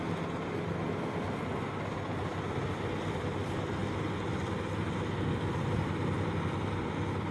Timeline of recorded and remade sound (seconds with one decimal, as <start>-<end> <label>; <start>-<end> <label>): 0.0-7.3 recorded